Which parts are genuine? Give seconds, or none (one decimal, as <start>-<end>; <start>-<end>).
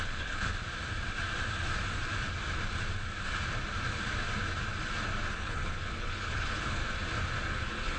0.5-5.3; 6.8-7.5